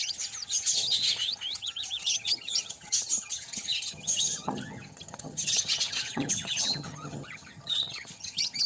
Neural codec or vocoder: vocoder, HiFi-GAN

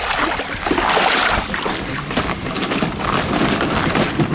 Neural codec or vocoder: none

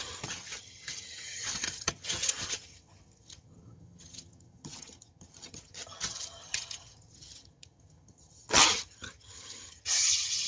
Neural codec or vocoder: vocoder, HiFi-GAN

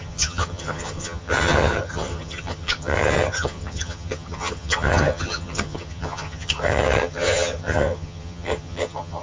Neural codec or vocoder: vocoder, HiFi-GAN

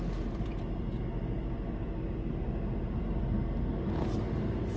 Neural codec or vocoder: none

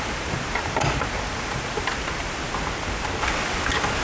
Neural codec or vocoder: none